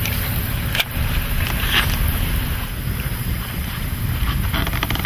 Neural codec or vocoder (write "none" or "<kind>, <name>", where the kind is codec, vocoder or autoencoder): vocoder, BigVGAN v2